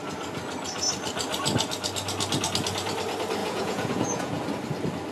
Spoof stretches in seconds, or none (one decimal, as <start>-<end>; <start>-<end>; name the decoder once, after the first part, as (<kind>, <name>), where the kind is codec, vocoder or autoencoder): 3.4-4.4 (vocoder, Vocos)